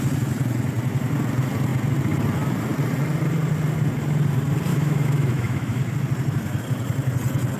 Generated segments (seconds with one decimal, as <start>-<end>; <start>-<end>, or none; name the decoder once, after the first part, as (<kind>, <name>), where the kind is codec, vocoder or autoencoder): 4.7-5.8 (autoencoder, DAC-VAE)